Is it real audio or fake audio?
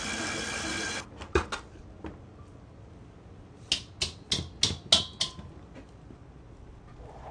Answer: real